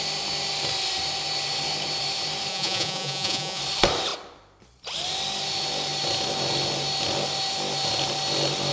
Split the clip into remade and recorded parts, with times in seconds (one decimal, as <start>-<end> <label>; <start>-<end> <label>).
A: 0.0-2.5 recorded; 2.5-3.6 remade; 3.6-8.7 recorded